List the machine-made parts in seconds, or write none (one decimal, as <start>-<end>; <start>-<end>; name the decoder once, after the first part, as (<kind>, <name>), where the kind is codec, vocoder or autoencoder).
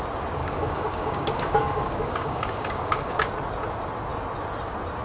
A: 0.4-3.3 (codec, DAC)